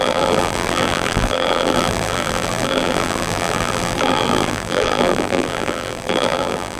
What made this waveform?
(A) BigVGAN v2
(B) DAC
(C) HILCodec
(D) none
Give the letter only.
A